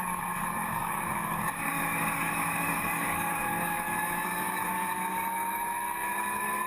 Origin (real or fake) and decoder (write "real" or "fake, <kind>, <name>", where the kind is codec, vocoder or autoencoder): fake, codec, DAC